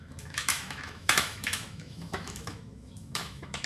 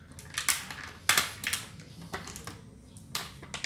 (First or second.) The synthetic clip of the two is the first